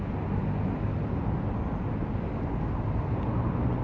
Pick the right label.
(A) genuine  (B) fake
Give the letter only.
A